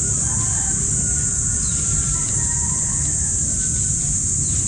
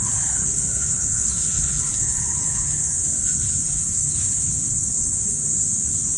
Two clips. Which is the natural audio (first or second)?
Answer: first